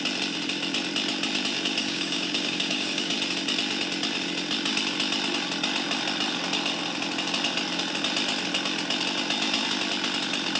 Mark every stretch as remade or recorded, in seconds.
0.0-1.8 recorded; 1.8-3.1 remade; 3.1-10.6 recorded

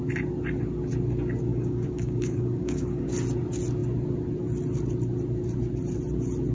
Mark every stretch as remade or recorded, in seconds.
0.0-1.5 recorded; 1.5-3.1 remade; 3.1-6.5 recorded

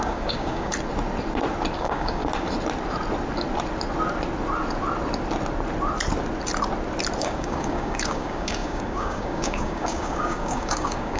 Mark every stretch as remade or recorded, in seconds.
0.0-0.7 remade; 0.7-1.8 recorded; 1.8-2.2 remade; 2.2-7.2 recorded; 7.2-11.2 remade

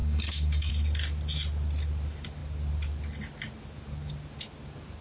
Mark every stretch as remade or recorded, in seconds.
0.0-0.7 remade; 0.7-5.0 recorded

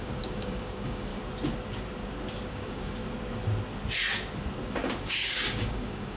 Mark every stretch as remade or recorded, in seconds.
0.0-1.1 remade; 1.1-2.5 recorded; 2.5-3.0 remade; 3.0-5.0 recorded; 5.0-6.2 remade

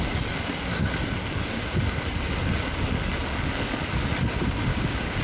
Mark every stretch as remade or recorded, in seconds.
0.0-4.7 recorded; 4.7-5.2 remade

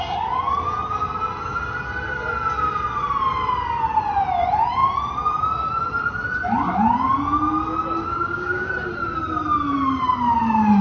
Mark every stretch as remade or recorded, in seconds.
0.0-8.1 recorded; 8.1-8.7 remade; 8.7-10.8 recorded

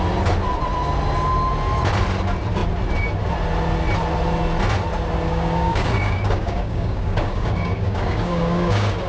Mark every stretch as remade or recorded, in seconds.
0.0-5.3 recorded; 5.3-9.1 remade